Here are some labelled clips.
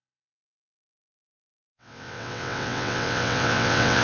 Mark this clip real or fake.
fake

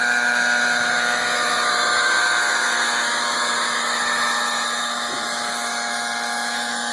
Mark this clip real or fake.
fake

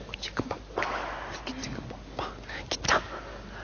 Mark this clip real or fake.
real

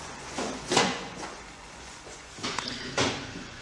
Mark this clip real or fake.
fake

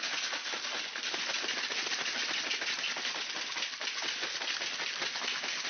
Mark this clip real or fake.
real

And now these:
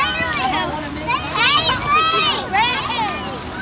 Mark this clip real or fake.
real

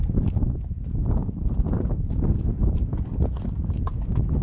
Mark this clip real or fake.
real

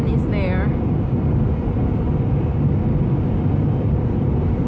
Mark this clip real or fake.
real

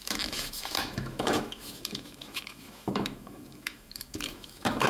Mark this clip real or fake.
fake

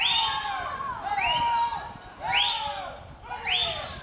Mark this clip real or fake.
real